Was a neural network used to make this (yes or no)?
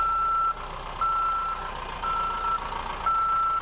no